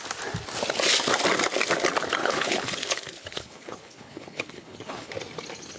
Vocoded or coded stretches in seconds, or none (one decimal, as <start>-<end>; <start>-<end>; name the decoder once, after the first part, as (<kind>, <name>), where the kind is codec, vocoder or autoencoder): 2.2-5.1 (codec, HILCodec)

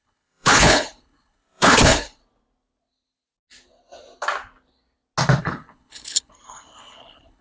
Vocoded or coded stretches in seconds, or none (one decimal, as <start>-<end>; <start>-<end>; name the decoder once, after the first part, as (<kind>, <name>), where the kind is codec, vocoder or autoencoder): 0.0-2.2 (codec, HILCodec); 5.4-7.4

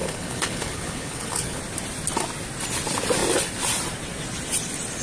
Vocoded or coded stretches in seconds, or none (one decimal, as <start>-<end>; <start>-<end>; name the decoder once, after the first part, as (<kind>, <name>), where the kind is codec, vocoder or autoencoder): 0.0-1.6 (codec, HILCodec)

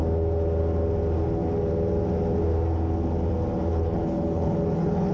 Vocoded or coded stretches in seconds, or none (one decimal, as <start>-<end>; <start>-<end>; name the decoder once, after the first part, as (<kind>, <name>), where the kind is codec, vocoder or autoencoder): 3.7-5.1 (codec, HILCodec)

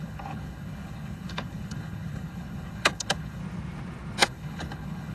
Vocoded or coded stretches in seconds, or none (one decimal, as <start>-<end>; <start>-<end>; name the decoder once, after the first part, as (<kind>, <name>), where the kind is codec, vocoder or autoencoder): 0.0-3.4 (codec, HILCodec); 4.2-5.1

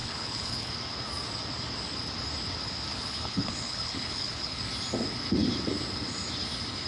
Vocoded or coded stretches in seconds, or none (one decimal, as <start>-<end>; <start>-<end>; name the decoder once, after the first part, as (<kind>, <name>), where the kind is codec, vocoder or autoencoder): 0.0-0.7 (codec, HILCodec); 2.9-4.6